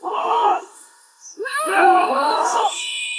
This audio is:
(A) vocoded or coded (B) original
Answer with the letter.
A